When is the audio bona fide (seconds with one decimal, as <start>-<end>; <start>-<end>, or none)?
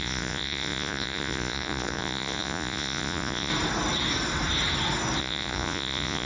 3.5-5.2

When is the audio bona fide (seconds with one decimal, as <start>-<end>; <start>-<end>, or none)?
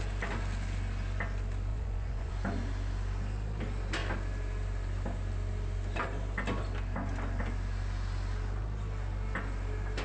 0.0-1.7; 2.3-10.0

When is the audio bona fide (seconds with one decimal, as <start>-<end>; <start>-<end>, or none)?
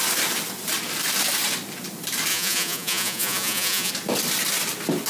0.0-2.3; 3.9-5.1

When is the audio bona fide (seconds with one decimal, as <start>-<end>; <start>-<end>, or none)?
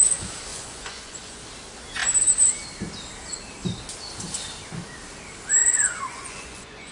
0.0-0.5; 1.4-5.6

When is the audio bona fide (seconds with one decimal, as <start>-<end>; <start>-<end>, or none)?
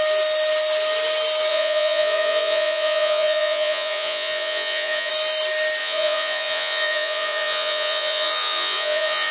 0.0-1.5; 5.1-5.8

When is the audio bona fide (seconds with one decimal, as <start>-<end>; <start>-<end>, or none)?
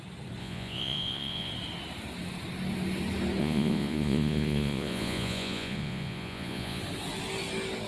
0.0-0.4; 1.5-3.4; 6.8-7.9